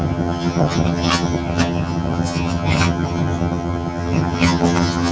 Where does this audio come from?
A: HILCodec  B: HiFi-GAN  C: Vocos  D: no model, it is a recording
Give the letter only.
B